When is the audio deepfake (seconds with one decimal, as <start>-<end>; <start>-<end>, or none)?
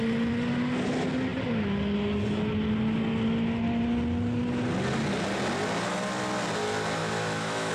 7.0-7.7